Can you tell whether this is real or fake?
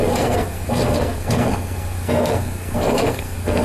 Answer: fake